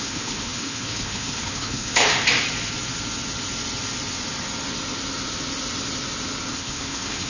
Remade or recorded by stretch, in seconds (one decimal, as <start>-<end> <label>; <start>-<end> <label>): 0.0-2.1 remade; 2.1-6.5 recorded; 6.5-7.3 remade